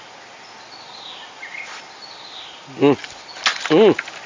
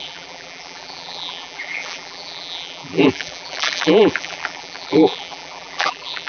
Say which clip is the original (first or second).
first